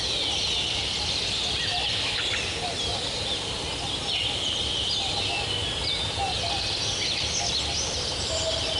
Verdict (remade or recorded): recorded